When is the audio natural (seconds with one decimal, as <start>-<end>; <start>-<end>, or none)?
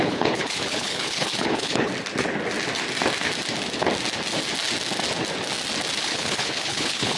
1.9-6.0